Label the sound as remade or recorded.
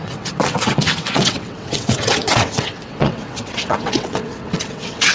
remade